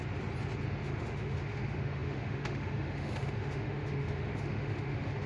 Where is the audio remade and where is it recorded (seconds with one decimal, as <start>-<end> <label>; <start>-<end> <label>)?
0.0-0.8 recorded; 0.8-5.3 remade